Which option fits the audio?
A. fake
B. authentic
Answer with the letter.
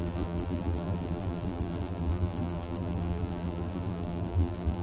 A